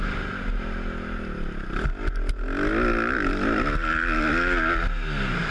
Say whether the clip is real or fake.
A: real